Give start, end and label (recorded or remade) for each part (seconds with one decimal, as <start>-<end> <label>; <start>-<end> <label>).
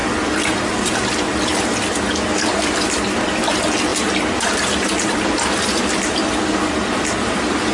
0.0-0.7 recorded; 0.7-7.7 remade